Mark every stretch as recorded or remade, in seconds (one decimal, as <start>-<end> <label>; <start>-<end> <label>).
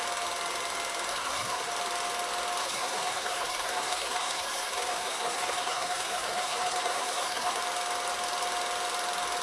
0.0-1.1 recorded; 1.1-1.7 remade; 1.7-2.6 recorded; 2.6-7.6 remade; 7.6-9.4 recorded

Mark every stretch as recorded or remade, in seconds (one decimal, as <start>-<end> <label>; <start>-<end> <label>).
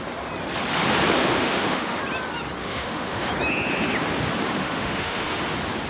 0.0-1.2 recorded; 1.2-2.0 remade; 2.0-2.6 recorded; 2.6-3.3 remade; 3.3-4.6 recorded; 4.6-5.4 remade; 5.4-5.9 recorded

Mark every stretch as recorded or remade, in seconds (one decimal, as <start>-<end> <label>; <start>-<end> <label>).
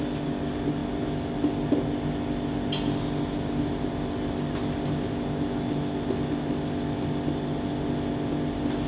0.0-8.9 recorded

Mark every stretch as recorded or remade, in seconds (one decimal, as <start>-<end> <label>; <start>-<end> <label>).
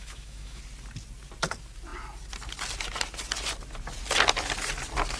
0.0-0.6 remade; 0.6-5.2 recorded